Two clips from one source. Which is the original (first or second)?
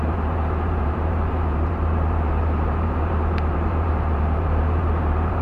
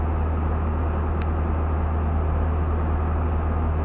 second